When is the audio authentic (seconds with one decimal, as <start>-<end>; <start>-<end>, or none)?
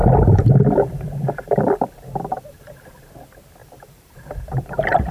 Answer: 3.1-3.6